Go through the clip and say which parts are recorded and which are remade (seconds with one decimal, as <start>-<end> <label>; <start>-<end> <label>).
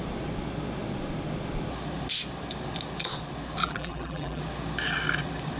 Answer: 0.0-3.6 recorded; 3.6-4.4 remade; 4.4-5.6 recorded